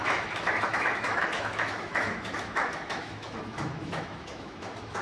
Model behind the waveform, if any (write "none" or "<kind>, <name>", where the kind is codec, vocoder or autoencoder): autoencoder, DAC-VAE